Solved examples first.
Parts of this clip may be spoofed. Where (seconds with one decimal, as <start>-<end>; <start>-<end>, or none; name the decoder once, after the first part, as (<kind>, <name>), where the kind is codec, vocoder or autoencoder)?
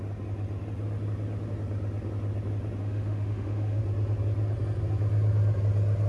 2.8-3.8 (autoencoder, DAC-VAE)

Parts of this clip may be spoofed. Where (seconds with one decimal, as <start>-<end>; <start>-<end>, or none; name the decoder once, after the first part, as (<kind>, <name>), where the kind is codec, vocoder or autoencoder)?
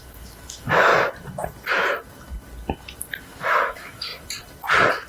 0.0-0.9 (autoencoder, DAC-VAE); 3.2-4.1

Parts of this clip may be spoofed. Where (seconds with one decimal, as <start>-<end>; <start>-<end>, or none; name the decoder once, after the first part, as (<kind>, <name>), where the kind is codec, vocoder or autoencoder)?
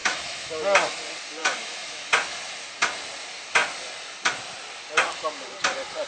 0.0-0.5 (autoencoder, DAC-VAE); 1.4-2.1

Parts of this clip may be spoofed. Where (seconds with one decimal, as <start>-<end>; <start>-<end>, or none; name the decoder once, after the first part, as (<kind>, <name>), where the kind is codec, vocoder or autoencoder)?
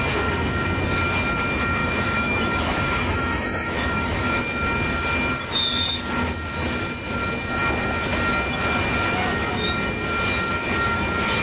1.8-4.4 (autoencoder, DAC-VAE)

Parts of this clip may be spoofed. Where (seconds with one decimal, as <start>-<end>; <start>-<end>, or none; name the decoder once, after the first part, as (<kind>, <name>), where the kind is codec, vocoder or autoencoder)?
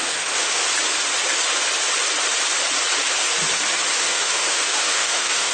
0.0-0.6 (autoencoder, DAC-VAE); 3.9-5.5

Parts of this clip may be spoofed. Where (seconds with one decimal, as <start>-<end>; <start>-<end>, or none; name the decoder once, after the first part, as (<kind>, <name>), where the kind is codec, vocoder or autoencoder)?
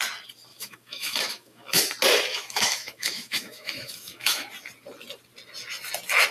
0.5-1.8 (autoencoder, DAC-VAE); 2.3-4.5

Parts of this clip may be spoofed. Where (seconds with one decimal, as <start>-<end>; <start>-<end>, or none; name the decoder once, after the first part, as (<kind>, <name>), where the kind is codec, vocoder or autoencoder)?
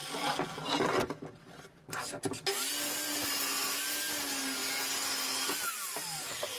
none